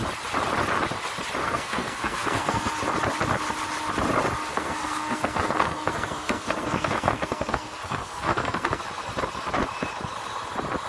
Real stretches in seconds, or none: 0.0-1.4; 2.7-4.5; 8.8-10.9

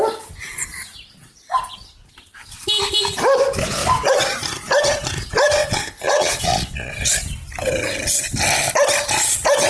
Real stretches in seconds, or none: 0.0-5.6; 6.9-9.7